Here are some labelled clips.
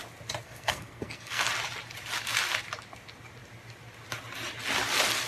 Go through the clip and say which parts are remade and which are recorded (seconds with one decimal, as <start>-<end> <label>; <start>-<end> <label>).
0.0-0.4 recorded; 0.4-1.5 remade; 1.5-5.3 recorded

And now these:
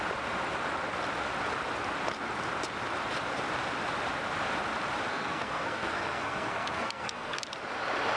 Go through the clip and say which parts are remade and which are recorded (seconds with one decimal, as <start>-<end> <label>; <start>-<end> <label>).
0.0-5.1 recorded; 5.1-7.4 remade; 7.4-8.2 recorded

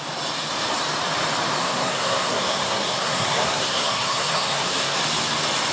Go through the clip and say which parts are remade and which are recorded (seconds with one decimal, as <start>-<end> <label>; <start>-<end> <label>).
0.0-1.6 recorded; 1.6-5.0 remade; 5.0-5.7 recorded

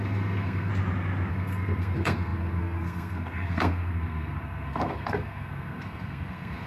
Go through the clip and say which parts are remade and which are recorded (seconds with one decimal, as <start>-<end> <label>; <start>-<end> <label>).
0.0-0.7 remade; 0.7-1.3 recorded; 1.3-6.7 remade